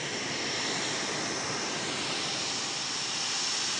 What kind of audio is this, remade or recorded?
recorded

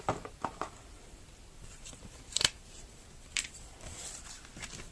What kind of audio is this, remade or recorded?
remade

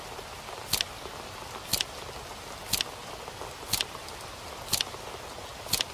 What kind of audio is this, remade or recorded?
recorded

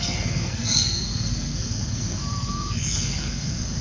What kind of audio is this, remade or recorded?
remade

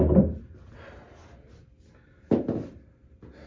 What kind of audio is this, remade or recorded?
recorded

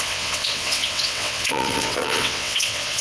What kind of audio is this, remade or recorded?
remade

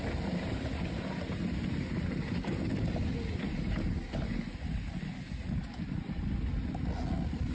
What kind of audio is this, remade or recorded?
recorded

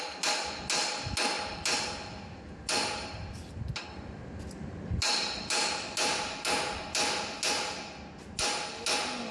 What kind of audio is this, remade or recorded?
recorded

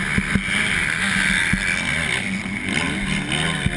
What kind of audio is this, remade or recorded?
recorded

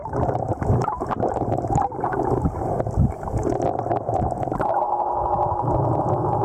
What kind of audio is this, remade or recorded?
recorded